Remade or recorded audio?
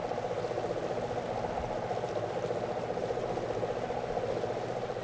recorded